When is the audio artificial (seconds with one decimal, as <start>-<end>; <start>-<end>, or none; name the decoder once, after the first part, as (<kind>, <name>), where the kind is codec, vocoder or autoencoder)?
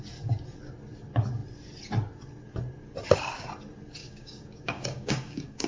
4.0-5.7 (codec, DAC)